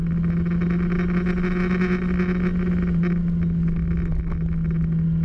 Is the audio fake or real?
real